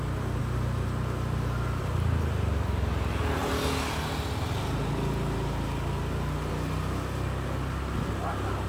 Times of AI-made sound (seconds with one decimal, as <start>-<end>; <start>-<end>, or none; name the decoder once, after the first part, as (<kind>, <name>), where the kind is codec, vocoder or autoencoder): none